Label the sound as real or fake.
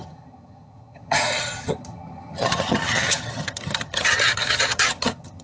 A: fake